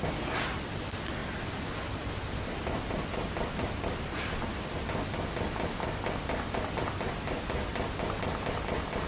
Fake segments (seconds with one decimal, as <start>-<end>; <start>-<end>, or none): none